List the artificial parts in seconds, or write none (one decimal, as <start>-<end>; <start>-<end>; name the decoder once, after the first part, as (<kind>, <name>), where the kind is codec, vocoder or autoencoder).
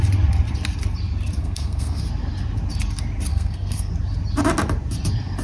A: 1.4-2.0 (codec, SNAC); 3.3-3.9